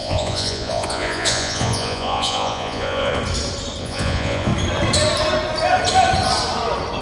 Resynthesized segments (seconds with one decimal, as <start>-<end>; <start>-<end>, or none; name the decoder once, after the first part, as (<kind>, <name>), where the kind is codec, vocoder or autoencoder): 0.0-3.2 (vocoder, Vocos); 3.8-4.5